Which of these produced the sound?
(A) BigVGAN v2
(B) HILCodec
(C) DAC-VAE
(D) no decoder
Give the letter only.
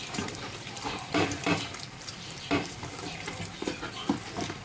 A